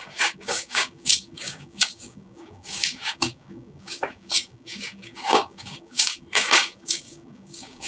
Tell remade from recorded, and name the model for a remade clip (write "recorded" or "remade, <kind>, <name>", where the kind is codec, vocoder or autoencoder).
remade, codec, DAC